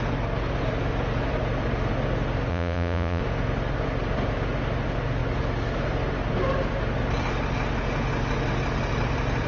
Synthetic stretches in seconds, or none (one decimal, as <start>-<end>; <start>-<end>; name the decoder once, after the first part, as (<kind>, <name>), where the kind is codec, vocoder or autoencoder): 2.5-3.2 (vocoder, Vocos)